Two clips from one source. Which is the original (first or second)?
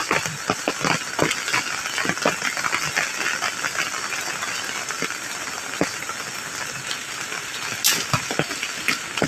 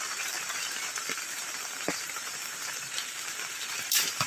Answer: first